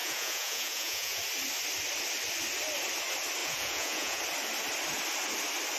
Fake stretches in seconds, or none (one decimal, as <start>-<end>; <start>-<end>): 0.0-1.2; 3.4-4.2